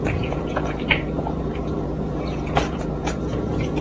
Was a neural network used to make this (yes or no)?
yes